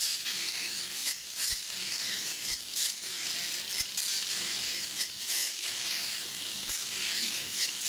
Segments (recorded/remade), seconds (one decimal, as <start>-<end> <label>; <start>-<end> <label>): 0.0-3.3 remade; 3.3-4.3 recorded; 4.3-7.9 remade

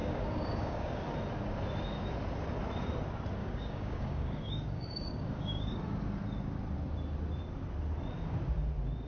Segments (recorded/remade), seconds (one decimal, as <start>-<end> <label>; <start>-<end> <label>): 0.0-1.0 remade; 1.0-3.4 recorded; 3.4-5.8 remade; 5.8-9.1 recorded

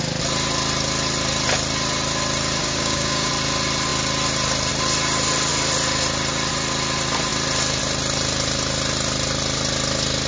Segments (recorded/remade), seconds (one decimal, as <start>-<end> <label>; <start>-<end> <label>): 0.0-2.6 recorded; 2.6-3.3 remade; 3.3-10.3 recorded

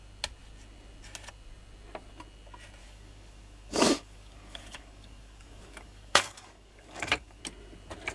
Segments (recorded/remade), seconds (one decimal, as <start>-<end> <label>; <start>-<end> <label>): 0.0-2.8 recorded; 2.8-7.4 remade; 7.4-8.1 recorded

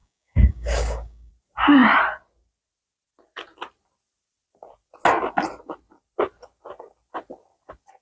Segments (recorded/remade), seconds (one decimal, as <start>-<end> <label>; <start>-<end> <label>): 0.0-1.3 remade; 1.3-8.0 recorded

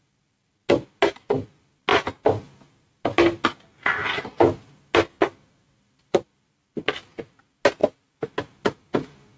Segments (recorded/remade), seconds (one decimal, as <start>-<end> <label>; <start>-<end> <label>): 0.0-9.4 recorded